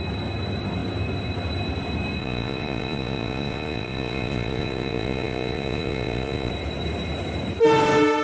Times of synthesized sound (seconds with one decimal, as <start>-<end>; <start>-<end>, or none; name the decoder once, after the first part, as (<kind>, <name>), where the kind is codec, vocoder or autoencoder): 2.2-6.5 (vocoder, Vocos)